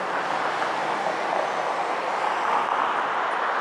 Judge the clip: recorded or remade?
recorded